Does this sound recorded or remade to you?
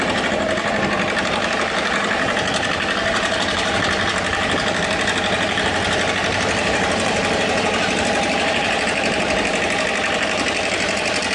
remade